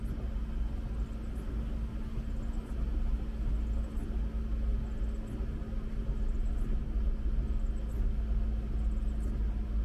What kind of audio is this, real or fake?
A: real